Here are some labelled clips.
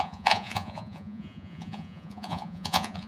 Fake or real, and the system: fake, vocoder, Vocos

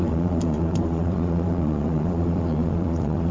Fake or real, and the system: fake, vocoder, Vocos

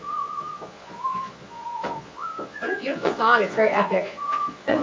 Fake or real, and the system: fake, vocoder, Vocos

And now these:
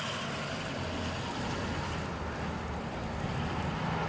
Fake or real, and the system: real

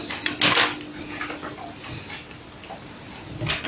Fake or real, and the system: real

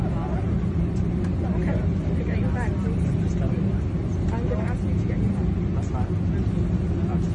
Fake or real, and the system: real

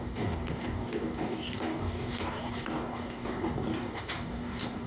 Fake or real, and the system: fake, codec, DAC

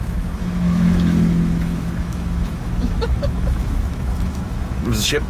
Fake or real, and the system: fake, autoencoder, DAC-VAE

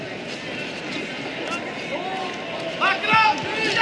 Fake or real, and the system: real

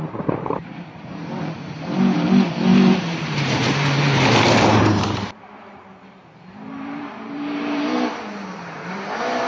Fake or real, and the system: fake, vocoder, BigVGAN v2